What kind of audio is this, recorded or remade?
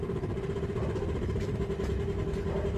recorded